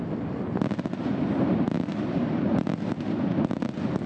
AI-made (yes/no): no